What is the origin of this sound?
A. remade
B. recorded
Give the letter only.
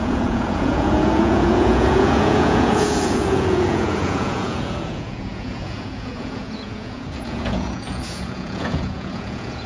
A